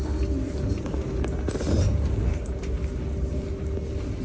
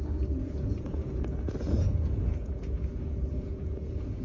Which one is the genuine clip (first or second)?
first